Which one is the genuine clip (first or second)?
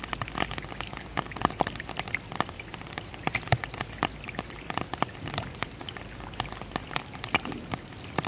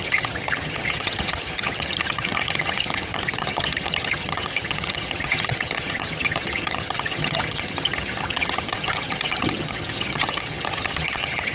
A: first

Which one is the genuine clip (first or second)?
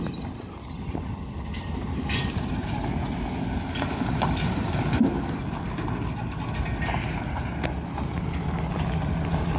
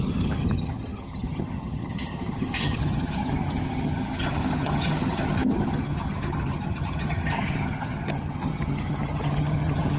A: first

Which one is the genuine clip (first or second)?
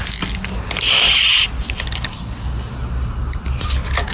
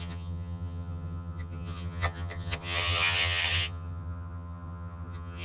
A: first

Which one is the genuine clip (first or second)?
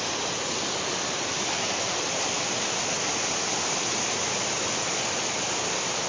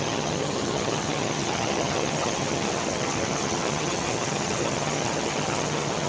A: first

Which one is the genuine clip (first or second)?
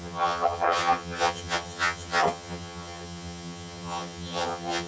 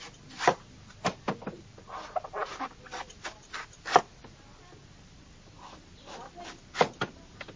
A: second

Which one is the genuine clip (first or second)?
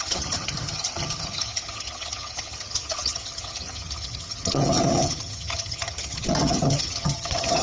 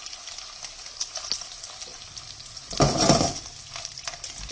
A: second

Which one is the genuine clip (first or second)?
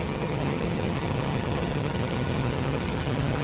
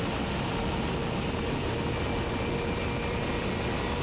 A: second